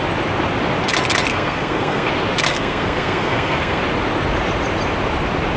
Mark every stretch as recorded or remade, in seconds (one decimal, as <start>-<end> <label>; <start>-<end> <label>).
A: 0.0-1.3 recorded; 1.3-2.1 remade; 2.1-2.5 recorded; 2.5-3.8 remade; 3.8-5.6 recorded